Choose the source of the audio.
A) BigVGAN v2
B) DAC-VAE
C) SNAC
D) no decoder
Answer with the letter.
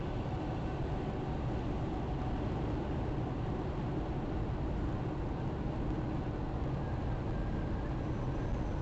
D